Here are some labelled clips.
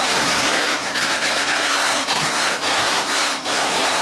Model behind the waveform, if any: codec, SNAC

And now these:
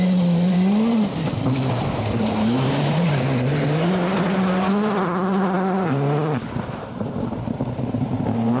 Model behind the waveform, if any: vocoder, BigVGAN v2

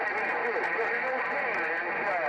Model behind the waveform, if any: none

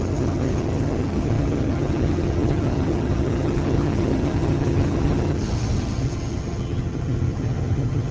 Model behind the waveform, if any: vocoder, HiFi-GAN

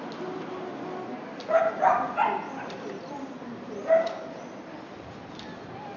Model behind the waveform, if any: none